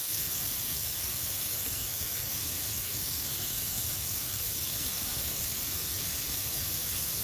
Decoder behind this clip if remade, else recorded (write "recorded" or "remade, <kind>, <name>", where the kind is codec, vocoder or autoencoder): remade, codec, SNAC